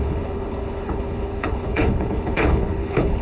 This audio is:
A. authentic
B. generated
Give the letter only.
B